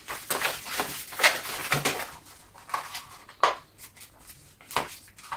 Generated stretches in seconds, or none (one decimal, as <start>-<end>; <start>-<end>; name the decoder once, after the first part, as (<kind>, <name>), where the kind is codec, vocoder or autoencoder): none